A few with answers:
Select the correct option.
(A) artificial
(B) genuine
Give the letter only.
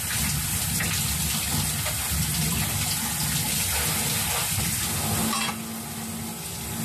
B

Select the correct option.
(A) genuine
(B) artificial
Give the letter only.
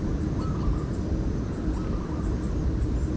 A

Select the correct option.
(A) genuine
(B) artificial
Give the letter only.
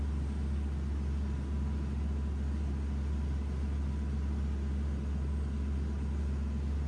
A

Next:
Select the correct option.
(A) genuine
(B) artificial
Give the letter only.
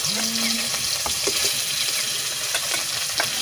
A